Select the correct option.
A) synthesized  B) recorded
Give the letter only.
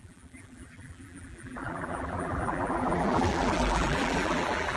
A